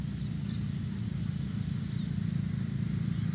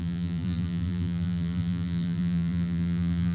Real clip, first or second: first